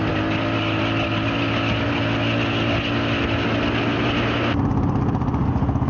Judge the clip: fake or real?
real